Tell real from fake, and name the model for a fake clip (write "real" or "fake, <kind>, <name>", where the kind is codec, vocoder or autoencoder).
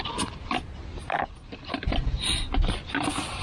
real